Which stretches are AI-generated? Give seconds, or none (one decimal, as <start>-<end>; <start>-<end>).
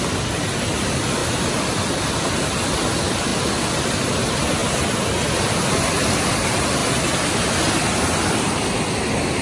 0.0-1.2; 2.1-4.6; 5.9-6.8; 8.4-9.4